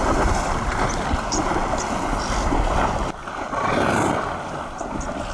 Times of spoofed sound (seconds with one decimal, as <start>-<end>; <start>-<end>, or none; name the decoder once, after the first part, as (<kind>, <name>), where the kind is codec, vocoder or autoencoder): none